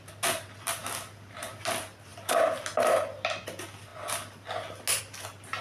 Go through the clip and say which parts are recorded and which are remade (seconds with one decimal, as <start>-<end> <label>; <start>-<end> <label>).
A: 0.0-5.6 recorded